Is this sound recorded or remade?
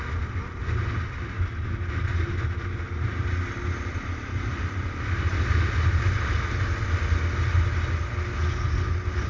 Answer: recorded